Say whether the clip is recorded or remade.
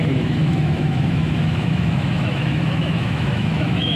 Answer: remade